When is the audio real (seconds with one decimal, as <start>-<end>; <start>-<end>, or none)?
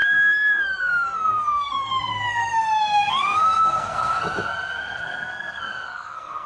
none